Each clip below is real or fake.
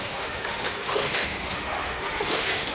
fake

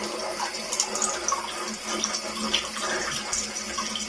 real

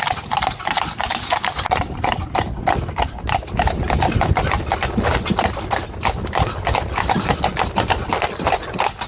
real